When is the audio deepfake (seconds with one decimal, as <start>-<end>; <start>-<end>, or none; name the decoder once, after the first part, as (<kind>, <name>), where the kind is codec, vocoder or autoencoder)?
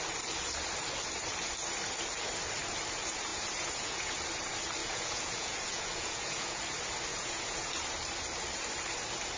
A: 3.3-4.1 (vocoder, Vocos); 4.8-6.6; 7.1-7.7